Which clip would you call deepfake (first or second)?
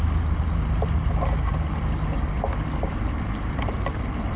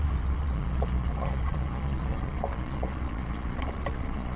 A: second